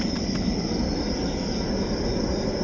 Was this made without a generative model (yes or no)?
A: yes